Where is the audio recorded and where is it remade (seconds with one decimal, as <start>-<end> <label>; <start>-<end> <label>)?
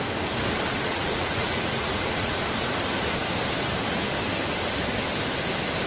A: 0.0-0.7 recorded; 0.7-2.3 remade; 2.3-5.9 recorded